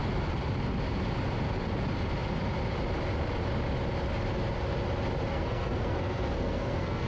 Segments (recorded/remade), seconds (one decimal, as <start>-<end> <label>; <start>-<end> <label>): 0.0-5.3 recorded; 5.3-7.1 remade